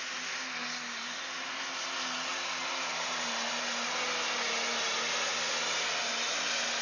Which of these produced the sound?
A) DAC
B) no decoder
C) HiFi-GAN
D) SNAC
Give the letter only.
B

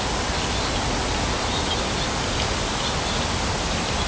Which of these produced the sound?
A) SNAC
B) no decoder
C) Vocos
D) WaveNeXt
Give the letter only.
B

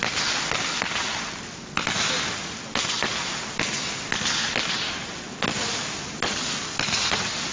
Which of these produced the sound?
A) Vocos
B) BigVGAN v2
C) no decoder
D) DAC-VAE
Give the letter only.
C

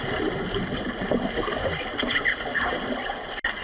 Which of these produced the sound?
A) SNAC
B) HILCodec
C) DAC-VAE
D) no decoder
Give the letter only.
D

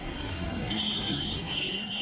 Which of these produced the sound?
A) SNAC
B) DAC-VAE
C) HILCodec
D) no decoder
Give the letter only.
A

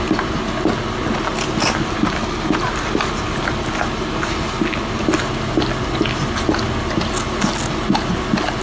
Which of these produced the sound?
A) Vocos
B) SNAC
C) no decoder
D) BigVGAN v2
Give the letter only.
C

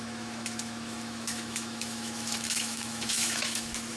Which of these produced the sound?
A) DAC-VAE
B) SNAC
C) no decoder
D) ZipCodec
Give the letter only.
A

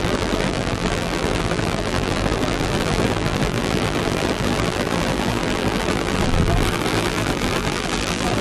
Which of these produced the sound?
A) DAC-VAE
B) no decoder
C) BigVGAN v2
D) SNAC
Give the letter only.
C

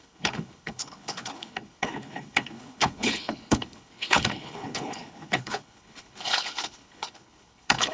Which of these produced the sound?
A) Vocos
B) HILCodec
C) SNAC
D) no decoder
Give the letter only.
B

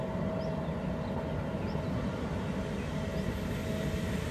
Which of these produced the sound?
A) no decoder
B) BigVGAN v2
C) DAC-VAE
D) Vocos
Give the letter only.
A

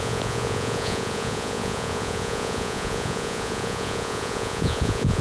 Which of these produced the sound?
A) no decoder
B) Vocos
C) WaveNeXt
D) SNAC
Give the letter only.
B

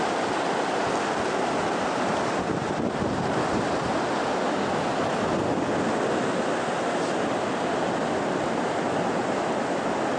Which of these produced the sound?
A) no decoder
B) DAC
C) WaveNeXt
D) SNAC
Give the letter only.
A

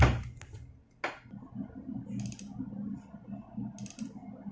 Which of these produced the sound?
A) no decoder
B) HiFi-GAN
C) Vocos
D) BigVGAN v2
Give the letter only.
A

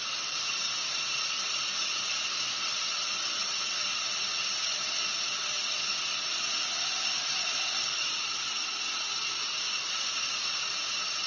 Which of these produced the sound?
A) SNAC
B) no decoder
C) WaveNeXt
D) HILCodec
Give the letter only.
B